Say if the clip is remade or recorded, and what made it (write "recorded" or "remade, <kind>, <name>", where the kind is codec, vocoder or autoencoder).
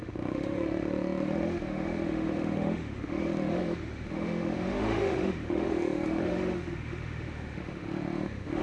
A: remade, autoencoder, DAC-VAE